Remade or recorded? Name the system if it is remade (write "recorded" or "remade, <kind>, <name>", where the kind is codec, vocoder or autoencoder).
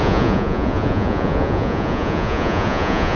remade, vocoder, Vocos